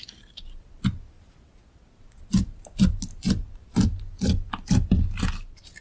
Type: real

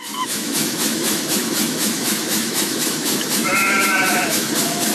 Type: fake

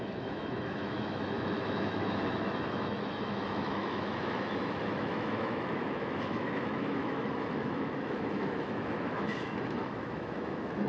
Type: fake